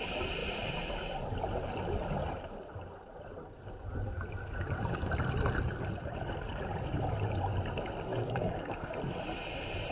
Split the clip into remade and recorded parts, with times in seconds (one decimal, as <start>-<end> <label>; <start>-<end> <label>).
0.0-8.1 recorded; 8.1-8.9 remade; 8.9-9.9 recorded